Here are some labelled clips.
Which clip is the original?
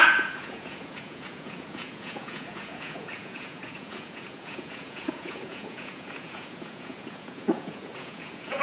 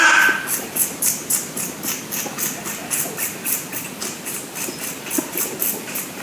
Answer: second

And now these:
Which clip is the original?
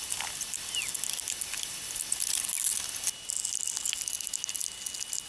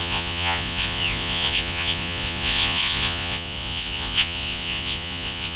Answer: first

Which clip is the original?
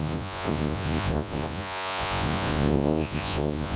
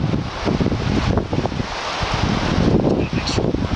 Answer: second